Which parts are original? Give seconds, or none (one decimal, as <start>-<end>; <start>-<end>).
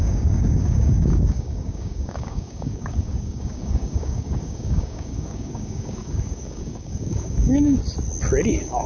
7.8-8.5